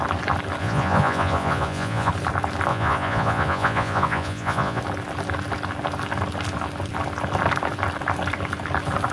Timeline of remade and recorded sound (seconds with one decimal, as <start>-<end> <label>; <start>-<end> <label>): 0.0-0.6 recorded; 0.6-2.1 remade; 2.1-2.7 recorded; 2.7-4.8 remade; 4.8-9.1 recorded